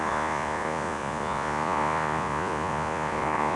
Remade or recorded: remade